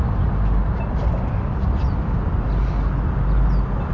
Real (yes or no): yes